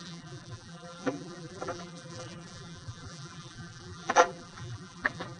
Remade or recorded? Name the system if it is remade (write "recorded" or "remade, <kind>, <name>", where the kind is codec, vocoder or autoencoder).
remade, vocoder, BigVGAN v2